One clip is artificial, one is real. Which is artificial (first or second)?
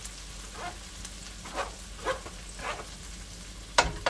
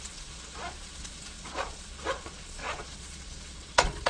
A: second